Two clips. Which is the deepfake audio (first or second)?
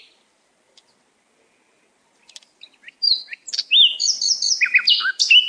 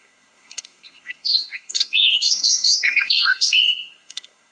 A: second